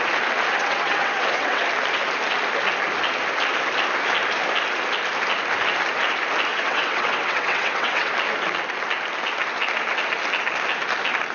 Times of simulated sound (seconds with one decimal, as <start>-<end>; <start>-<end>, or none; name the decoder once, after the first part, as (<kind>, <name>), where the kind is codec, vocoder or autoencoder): 0.6-1.6 (vocoder, WaveNeXt); 6.5-8.1

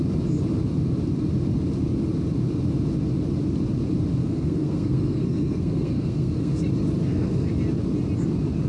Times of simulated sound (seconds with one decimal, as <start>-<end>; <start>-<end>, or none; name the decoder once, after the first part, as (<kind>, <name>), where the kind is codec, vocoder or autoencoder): 4.2-6.6 (codec, SNAC); 7.0-7.5

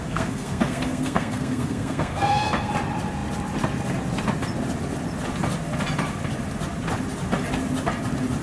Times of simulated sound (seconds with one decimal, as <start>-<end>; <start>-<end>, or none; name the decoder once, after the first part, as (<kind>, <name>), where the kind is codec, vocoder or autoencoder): 0.0-2.7 (codec, SNAC)

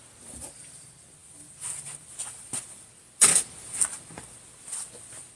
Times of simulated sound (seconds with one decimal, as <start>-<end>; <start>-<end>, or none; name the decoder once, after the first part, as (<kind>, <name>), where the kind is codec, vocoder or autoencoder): 1.2-4.4 (vocoder, BigVGAN v2)

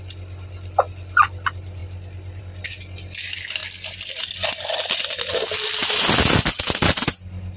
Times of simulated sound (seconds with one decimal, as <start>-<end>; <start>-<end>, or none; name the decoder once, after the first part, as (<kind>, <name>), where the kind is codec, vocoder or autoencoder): none

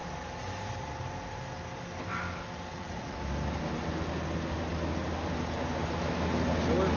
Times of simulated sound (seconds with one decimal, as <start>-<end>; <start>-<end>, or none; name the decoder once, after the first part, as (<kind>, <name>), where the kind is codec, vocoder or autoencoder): 2.7-3.2 (vocoder, Vocos)

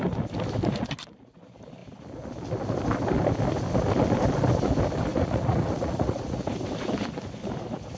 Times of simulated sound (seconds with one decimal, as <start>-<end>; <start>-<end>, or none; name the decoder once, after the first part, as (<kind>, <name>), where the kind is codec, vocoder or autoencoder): 5.1-6.4 (vocoder, Vocos)

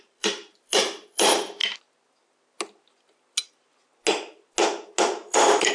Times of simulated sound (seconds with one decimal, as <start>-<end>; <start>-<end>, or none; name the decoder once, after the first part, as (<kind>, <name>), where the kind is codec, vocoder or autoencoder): 0.0-1.6 (vocoder, BigVGAN v2); 5.0-5.7